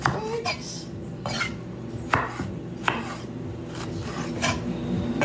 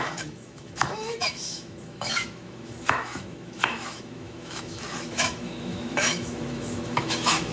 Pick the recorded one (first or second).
first